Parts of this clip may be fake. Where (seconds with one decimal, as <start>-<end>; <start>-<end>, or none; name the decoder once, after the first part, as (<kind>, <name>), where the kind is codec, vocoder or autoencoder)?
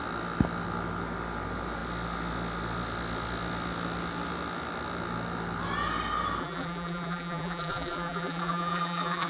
6.4-9.3 (vocoder, BigVGAN v2)